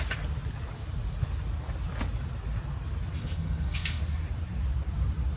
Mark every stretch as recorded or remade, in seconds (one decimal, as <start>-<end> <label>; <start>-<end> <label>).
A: 0.0-3.2 recorded; 3.2-4.0 remade; 4.0-5.4 recorded